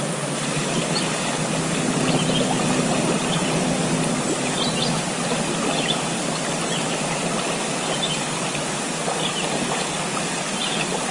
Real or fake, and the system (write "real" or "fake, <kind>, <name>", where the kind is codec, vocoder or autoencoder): real